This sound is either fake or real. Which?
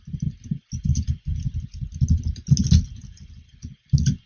real